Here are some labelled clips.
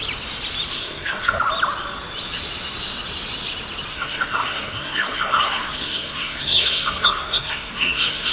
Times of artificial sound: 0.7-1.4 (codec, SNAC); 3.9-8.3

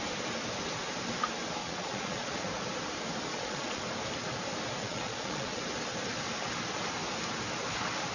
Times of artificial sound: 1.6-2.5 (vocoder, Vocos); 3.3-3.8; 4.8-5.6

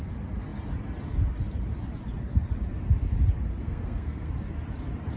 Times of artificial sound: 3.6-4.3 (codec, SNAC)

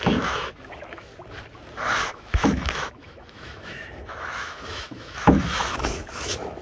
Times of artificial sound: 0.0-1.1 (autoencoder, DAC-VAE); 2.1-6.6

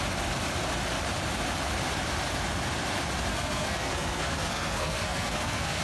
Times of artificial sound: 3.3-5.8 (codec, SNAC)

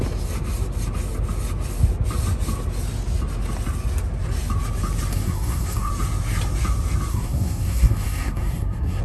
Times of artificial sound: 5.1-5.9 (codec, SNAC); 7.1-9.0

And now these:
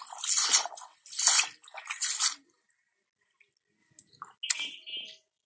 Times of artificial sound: none